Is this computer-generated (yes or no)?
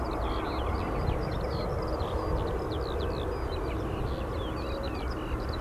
no